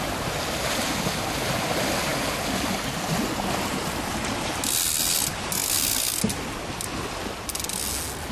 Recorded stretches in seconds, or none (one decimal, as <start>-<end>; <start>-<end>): 0.0-8.3

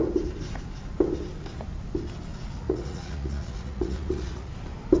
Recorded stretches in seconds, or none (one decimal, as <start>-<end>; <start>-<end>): 0.0-2.3; 4.5-5.0